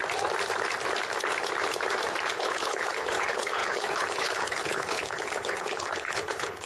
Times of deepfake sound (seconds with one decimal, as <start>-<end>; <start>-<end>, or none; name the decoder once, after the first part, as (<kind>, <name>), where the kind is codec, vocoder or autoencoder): 2.3-6.7 (codec, HILCodec)